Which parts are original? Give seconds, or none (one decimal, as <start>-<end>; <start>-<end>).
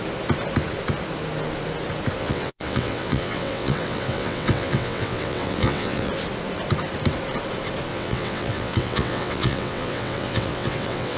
0.0-2.2; 6.1-7.9